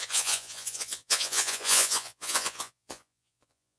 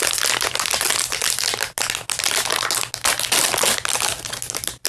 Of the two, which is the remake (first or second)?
first